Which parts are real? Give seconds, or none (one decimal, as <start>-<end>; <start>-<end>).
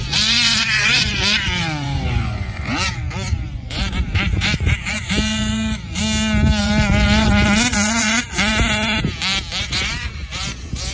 6.0-6.6; 8.5-9.6